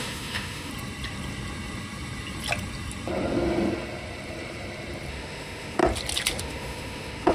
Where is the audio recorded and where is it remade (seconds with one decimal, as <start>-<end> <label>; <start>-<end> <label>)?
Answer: 0.0-0.7 remade; 0.7-5.1 recorded; 5.1-5.8 remade; 5.8-6.4 recorded; 6.4-7.3 remade